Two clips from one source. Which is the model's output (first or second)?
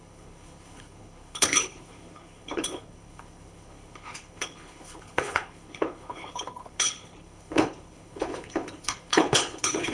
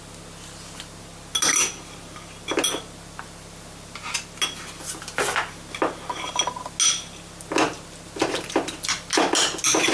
first